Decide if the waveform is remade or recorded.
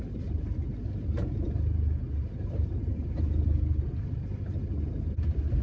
recorded